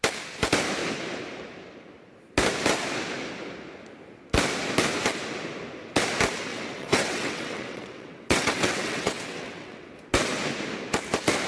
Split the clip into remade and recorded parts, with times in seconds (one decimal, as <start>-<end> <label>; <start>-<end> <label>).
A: 0.0-6.5 recorded; 6.5-9.9 remade; 9.9-11.5 recorded